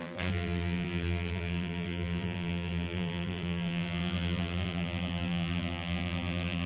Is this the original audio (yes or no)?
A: no